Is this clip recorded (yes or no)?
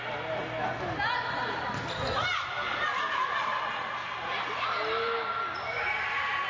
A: yes